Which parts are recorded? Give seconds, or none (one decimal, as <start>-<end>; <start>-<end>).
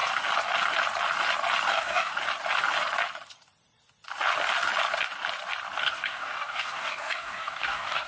0.0-1.7; 2.1-5.8